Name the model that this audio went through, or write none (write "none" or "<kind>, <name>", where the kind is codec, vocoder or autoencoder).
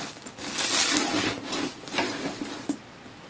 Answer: none